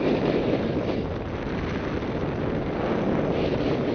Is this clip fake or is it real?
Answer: real